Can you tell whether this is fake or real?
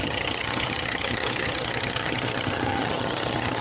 fake